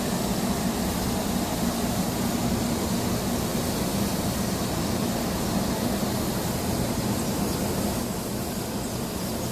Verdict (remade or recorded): recorded